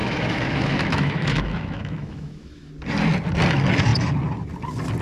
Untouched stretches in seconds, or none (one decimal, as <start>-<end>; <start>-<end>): 2.7-5.0